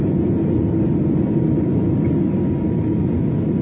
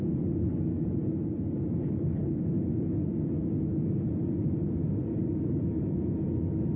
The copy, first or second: first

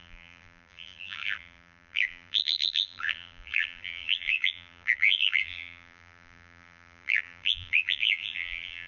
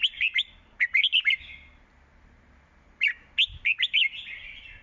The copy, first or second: first